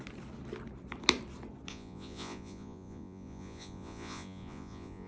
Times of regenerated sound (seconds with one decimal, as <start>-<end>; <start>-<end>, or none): 1.7-5.1